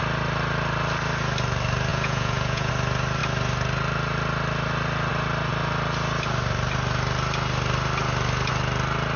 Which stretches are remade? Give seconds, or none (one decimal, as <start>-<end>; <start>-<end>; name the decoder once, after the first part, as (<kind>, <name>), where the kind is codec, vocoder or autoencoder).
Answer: 1.9-2.7 (vocoder, Vocos)